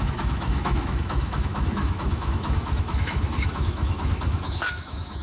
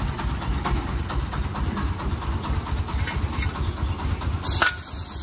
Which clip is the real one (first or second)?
second